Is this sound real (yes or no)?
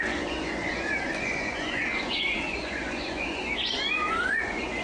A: no